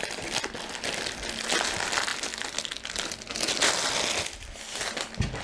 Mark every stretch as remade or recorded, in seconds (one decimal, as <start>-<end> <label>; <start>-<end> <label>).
0.0-5.4 recorded